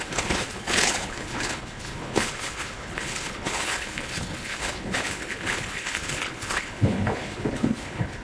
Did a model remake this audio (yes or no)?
yes